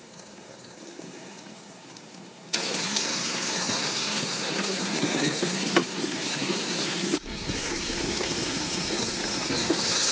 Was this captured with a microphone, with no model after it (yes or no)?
no